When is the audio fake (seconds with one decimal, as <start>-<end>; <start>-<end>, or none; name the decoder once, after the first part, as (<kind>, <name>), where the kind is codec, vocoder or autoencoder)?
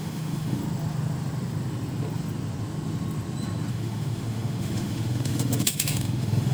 0.0-0.6 (autoencoder, DAC-VAE); 3.7-6.5